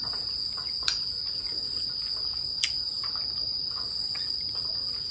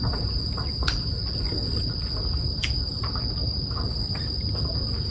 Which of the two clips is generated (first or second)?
second